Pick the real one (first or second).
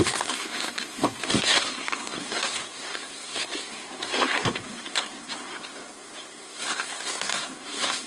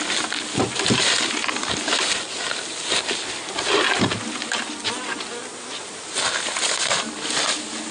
second